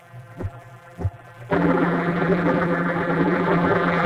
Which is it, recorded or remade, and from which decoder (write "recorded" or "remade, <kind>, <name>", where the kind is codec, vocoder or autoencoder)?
remade, vocoder, BigVGAN v2